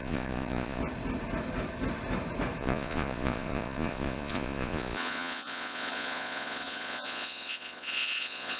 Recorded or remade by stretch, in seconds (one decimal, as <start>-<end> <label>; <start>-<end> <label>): 0.0-0.8 remade; 0.8-2.6 recorded; 2.6-8.6 remade